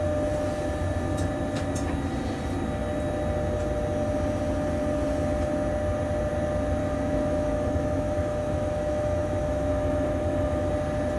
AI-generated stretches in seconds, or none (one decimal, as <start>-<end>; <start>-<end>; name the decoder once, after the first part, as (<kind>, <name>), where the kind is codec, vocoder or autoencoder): 6.8-10.7 (autoencoder, DAC-VAE)

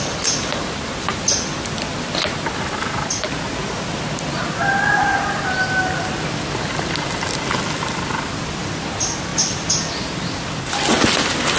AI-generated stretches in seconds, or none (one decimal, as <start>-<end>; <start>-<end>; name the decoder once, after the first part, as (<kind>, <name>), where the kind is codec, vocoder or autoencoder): none

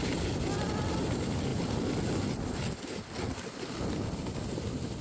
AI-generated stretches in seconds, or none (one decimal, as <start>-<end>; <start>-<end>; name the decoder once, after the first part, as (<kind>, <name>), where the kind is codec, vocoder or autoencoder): none